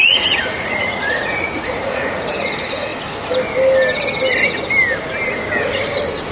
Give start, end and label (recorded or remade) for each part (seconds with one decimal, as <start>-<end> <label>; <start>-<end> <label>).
0.0-2.9 remade; 2.9-6.3 recorded

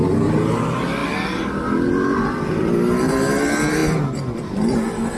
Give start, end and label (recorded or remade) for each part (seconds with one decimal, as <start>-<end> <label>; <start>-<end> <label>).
0.0-5.2 recorded